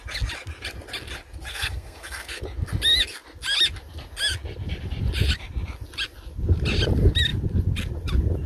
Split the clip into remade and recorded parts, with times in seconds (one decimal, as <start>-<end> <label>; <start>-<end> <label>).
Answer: 0.0-1.5 recorded; 1.5-2.4 remade; 2.4-8.5 recorded